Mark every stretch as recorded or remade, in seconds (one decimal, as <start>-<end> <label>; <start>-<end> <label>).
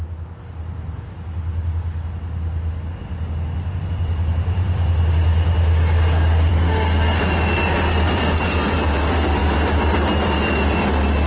0.0-6.5 recorded; 6.5-7.2 remade; 7.2-11.3 recorded